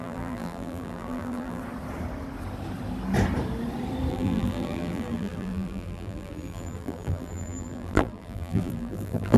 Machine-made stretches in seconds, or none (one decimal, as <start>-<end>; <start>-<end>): 0.0-1.6; 4.1-9.4